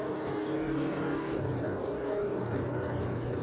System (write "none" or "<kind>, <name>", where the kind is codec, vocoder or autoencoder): codec, DAC